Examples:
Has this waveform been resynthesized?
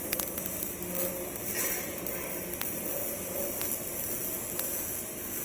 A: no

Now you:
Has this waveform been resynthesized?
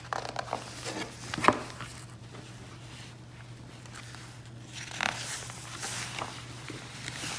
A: no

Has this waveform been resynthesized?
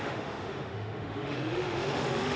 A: yes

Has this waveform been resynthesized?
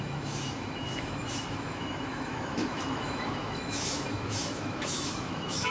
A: yes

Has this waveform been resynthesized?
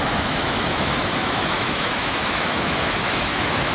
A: yes